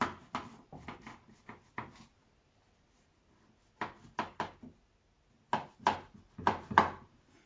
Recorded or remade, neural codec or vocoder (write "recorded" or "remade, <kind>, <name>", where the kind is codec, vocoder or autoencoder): recorded